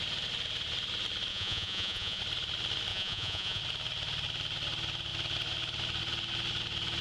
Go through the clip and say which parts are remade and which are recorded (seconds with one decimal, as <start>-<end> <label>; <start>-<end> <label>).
0.0-1.3 recorded; 1.3-2.2 remade; 2.2-2.9 recorded; 2.9-3.6 remade; 3.6-7.0 recorded